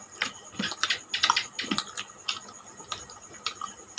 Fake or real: real